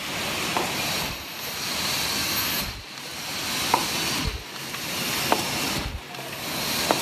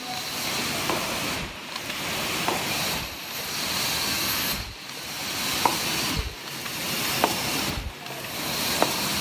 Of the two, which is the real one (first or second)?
first